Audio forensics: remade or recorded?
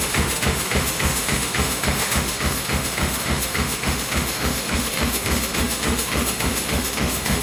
remade